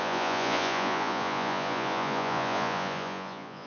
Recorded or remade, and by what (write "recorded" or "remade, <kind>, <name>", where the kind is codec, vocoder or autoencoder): remade, vocoder, Vocos